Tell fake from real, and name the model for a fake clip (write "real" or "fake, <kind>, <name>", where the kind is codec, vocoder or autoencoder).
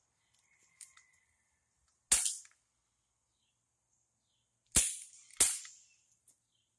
real